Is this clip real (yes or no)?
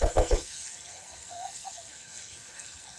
no